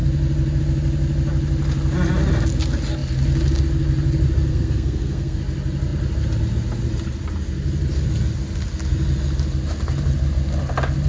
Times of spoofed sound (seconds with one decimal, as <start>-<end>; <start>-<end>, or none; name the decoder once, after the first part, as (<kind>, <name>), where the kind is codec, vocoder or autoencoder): 4.5-5.4 (codec, SNAC)